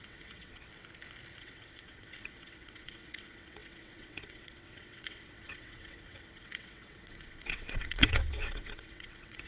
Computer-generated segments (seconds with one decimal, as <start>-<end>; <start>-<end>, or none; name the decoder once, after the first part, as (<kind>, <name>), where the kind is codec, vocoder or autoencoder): 0.0-0.7 (vocoder, WaveNeXt); 1.4-9.5